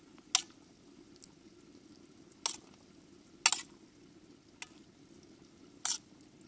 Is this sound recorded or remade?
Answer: recorded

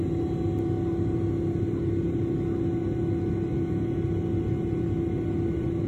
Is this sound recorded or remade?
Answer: recorded